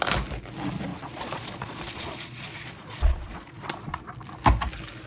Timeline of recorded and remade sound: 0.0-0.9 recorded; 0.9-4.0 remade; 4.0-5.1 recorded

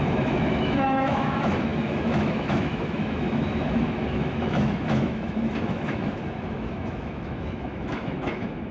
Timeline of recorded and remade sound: 0.0-8.7 remade

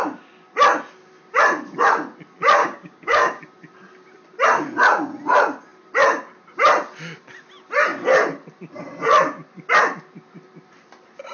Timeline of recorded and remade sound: 0.0-2.6 recorded; 2.6-3.4 remade; 3.4-11.3 recorded